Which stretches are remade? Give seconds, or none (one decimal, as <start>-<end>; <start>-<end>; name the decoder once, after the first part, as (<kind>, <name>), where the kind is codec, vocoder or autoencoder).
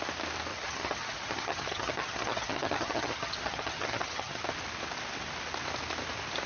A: 0.5-4.4 (vocoder, HiFi-GAN)